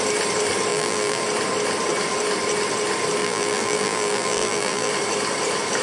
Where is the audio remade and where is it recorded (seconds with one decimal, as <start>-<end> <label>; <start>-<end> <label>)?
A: 0.0-0.7 recorded; 0.7-1.2 remade; 1.2-3.2 recorded; 3.2-4.9 remade; 4.9-5.8 recorded